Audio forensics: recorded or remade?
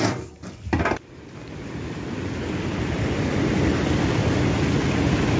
recorded